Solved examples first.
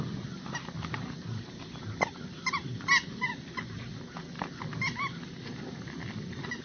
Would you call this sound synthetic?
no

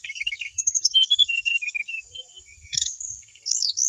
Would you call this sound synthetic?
yes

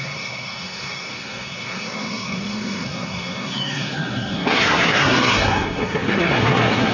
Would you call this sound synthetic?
yes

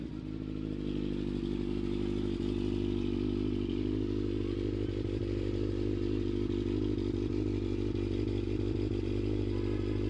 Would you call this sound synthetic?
no